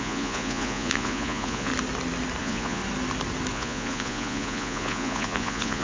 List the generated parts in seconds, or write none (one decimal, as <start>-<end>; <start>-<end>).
0.0-1.7; 2.4-2.8; 3.5-5.8